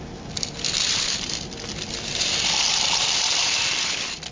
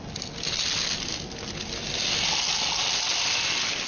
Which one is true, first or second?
second